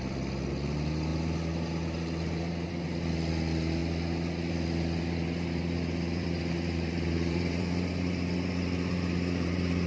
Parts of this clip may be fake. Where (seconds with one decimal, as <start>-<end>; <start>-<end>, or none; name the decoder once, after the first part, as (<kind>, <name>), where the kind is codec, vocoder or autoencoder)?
0.0-3.8 (vocoder, BigVGAN v2); 4.5-9.9